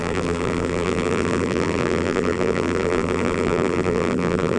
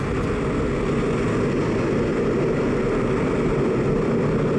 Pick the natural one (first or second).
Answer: second